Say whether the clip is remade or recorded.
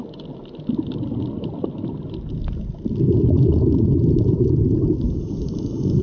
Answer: recorded